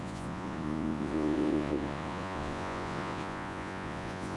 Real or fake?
fake